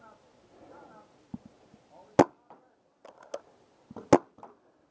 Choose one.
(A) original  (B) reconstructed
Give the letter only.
A